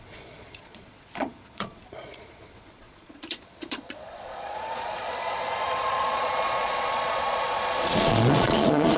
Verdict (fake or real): fake